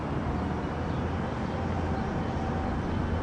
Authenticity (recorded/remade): recorded